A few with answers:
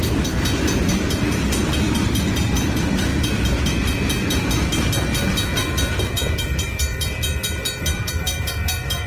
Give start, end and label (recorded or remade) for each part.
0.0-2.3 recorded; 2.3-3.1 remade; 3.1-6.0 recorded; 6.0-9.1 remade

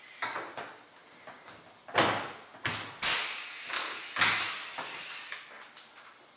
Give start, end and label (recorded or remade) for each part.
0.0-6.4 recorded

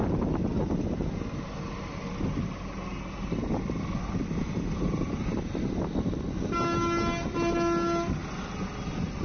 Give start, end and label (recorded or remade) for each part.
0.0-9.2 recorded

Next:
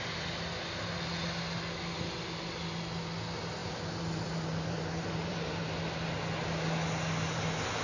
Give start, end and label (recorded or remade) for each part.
0.0-3.6 recorded; 3.6-5.7 remade; 5.7-7.8 recorded

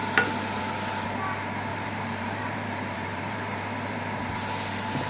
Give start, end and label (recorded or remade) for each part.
0.0-1.7 recorded; 1.7-4.2 remade; 4.2-5.1 recorded

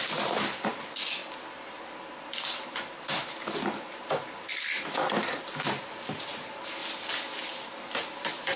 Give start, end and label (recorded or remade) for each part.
0.0-1.2 remade; 1.2-5.8 recorded; 5.8-6.8 remade; 6.8-7.5 recorded; 7.5-8.6 remade

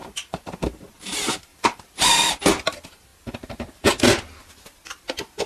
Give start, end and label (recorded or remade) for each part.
0.0-0.9 remade; 0.9-1.5 recorded; 1.5-2.1 remade; 2.1-3.1 recorded; 3.1-3.9 remade; 3.9-5.5 recorded